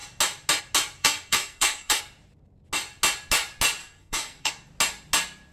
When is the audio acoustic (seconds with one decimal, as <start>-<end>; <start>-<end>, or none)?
0.0-1.0; 2.0-3.8; 4.5-5.5